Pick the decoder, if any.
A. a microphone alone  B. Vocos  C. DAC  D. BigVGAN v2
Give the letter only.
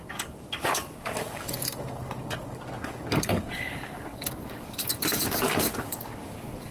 C